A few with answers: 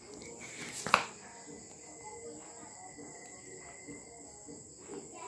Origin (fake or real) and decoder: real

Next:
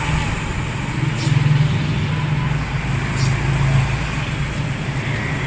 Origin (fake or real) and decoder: real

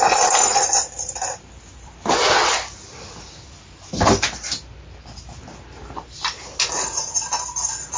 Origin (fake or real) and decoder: real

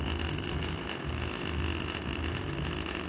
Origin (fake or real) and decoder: real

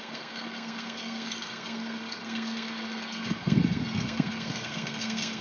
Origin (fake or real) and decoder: fake, codec, SNAC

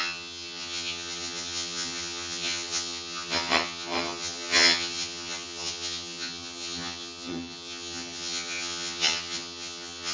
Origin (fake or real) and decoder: fake, vocoder, HiFi-GAN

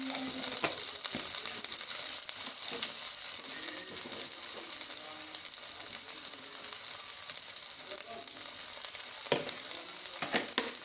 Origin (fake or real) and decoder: real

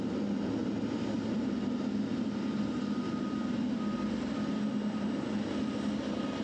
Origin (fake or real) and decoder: real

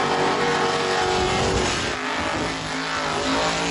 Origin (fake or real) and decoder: real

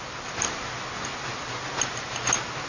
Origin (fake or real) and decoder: real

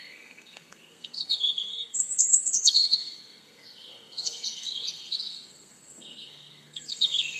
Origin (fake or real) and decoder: fake, codec, SNAC